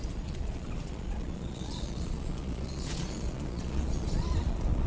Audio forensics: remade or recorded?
remade